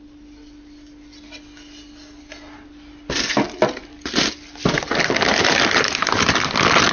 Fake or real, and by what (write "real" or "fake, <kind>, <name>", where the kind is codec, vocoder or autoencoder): real